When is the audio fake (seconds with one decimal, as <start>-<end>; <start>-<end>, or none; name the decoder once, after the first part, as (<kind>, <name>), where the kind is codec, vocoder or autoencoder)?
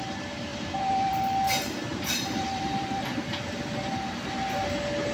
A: 0.5-1.2 (vocoder, BigVGAN v2); 1.9-3.6